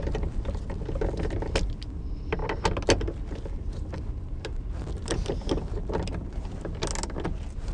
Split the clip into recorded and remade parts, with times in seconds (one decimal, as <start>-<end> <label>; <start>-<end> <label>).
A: 0.0-7.7 recorded